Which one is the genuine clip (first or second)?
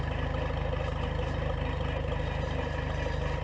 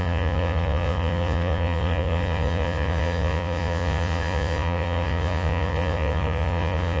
first